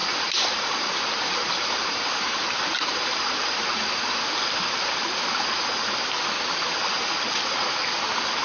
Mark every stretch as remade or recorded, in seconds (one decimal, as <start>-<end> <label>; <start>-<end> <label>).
0.0-4.2 remade; 4.2-8.4 recorded